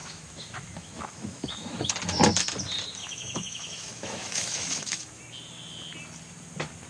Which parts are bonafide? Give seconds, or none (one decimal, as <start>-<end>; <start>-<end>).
1.9-3.0; 5.2-6.9